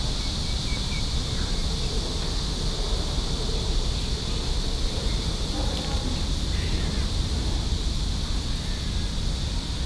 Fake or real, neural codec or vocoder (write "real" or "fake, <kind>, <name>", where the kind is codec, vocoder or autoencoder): real